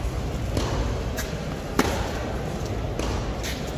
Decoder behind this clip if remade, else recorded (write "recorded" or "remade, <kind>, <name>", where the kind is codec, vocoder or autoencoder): recorded